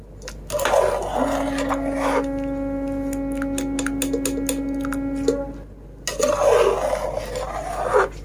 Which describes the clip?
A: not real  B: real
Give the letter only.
B